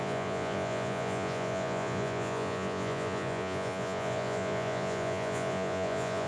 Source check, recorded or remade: remade